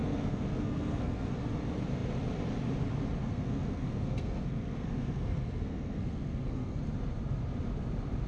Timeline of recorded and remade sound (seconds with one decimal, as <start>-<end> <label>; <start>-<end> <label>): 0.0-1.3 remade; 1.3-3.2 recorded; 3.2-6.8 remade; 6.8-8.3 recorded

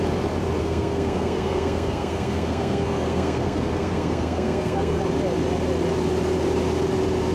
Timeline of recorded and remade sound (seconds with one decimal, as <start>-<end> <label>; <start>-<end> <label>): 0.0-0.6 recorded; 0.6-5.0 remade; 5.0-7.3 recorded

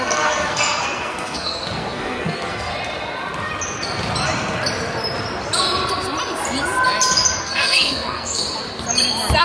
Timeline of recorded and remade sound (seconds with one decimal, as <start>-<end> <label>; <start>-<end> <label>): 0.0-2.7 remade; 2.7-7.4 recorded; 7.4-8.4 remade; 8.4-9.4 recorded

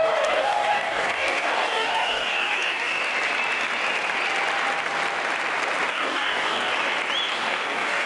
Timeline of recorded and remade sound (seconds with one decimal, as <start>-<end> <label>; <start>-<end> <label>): 0.0-3.1 remade; 3.1-5.9 recorded; 5.9-6.7 remade; 6.7-7.3 recorded; 7.3-8.1 remade

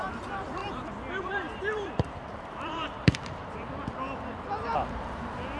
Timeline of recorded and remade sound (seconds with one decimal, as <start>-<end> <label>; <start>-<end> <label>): 0.0-0.6 remade; 0.6-1.2 recorded; 1.2-3.4 remade; 3.4-4.7 recorded; 4.7-5.6 remade

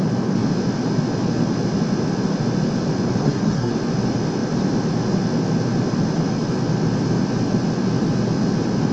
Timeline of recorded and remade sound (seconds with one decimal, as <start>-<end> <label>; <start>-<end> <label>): 0.0-3.2 recorded; 3.2-3.7 remade; 3.7-8.9 recorded

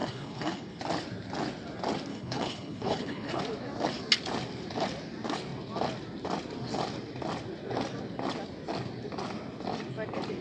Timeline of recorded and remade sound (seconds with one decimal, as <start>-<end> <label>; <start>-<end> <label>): 0.0-0.8 remade; 0.8-2.1 recorded; 2.1-3.4 remade; 3.4-10.4 recorded

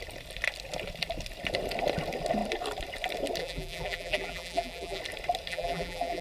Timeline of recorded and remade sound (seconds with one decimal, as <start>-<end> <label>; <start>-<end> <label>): 0.0-3.4 recorded; 3.4-5.0 remade; 5.0-5.5 recorded; 5.5-6.2 remade